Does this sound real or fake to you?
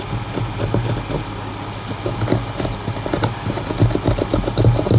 real